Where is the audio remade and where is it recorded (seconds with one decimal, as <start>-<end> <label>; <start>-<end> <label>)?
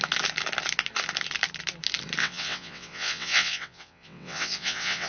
0.0-2.2 recorded; 2.2-5.1 remade